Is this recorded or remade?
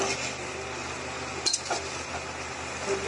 recorded